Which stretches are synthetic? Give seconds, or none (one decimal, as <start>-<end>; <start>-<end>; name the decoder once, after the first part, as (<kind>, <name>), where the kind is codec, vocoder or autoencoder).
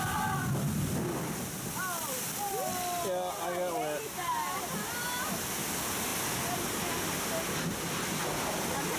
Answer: none